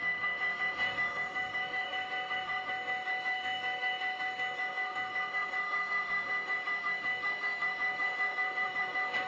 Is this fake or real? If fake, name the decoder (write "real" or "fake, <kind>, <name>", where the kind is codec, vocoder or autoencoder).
fake, autoencoder, DAC-VAE